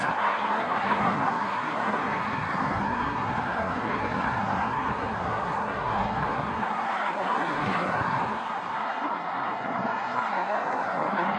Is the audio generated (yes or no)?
yes